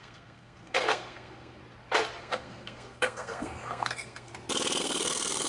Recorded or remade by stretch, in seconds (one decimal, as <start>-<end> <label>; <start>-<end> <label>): 0.0-1.6 remade; 1.6-2.2 recorded; 2.2-4.3 remade; 4.3-4.8 recorded; 4.8-5.5 remade